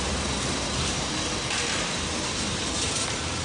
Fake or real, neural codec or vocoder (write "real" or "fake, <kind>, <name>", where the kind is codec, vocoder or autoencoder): real